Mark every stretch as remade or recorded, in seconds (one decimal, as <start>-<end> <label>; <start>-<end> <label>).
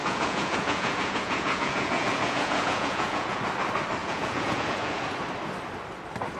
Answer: 0.0-3.4 remade; 3.4-4.0 recorded; 4.0-5.1 remade; 5.1-6.4 recorded